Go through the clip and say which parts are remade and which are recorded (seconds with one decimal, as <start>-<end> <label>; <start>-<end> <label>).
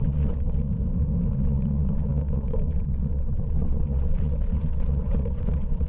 0.0-0.7 remade; 0.7-1.3 recorded; 1.3-5.9 remade